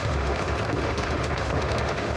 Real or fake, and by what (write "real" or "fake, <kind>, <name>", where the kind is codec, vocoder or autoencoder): fake, autoencoder, DAC-VAE